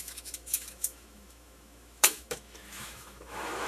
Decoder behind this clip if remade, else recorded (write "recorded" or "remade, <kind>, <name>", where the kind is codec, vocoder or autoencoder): remade, autoencoder, DAC-VAE